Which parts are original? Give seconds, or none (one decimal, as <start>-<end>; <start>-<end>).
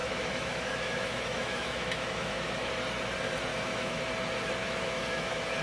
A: 2.7-3.5; 4.0-4.6